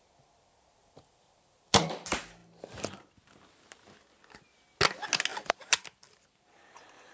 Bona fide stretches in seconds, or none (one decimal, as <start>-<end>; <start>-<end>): 0.0-0.8; 1.8-5.3